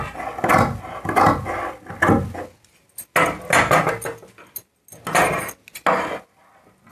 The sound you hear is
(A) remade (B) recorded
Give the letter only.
B